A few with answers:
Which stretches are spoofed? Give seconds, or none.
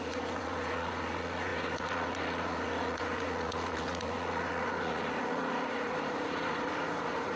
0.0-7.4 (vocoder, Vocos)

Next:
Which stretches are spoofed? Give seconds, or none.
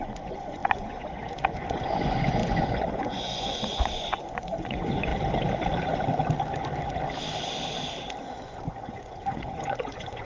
0.0-5.1 (vocoder, Vocos); 8.2-10.2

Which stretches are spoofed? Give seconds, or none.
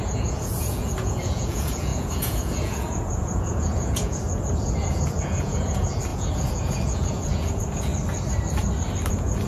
0.0-7.9 (vocoder, Vocos); 9.1-9.5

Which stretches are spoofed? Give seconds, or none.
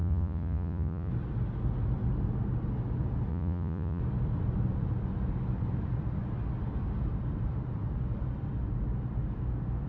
0.0-1.1 (vocoder, Vocos); 3.3-4.0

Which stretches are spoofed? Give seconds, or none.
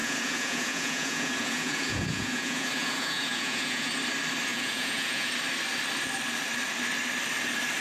0.0-3.9 (vocoder, Vocos); 4.5-5.3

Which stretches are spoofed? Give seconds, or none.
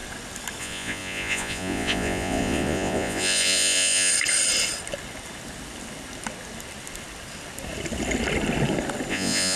0.6-4.1 (vocoder, Vocos); 9.1-9.6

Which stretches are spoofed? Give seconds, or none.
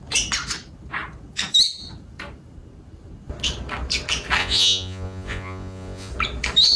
4.4-6.1 (vocoder, Vocos)